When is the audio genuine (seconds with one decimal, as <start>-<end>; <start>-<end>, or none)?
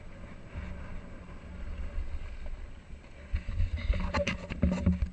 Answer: 0.0-5.1